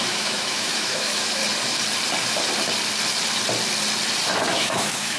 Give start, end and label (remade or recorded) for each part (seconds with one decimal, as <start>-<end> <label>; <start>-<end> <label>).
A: 0.0-1.4 remade; 1.4-4.5 recorded; 4.5-5.2 remade